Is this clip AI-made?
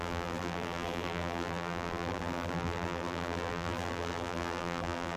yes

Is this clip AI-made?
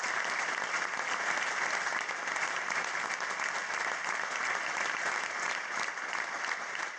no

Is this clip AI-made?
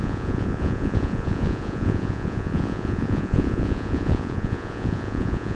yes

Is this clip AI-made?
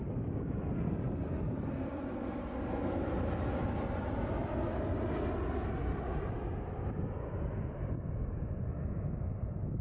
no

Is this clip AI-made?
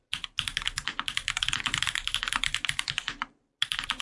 no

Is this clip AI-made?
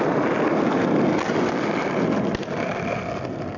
no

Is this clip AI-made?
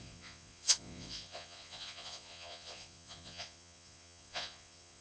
yes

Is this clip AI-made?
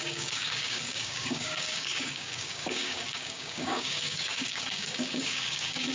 yes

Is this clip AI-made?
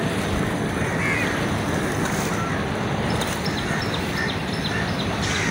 no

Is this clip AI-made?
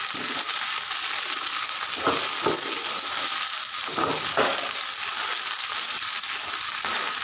no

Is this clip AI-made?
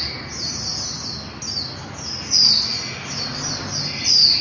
no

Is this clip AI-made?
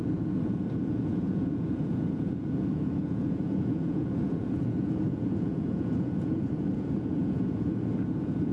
yes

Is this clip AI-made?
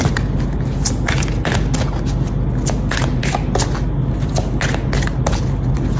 no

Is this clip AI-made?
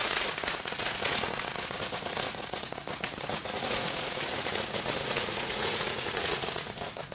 yes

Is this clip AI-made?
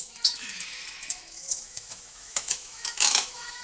yes